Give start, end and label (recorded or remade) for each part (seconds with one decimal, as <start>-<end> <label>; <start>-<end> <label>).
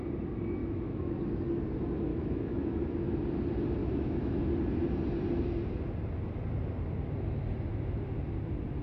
0.0-0.6 recorded; 0.6-1.2 remade; 1.2-2.1 recorded; 2.1-2.8 remade; 2.8-3.8 recorded; 3.8-4.4 remade; 4.4-8.8 recorded